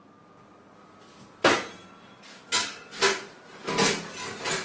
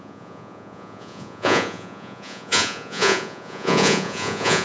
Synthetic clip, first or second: second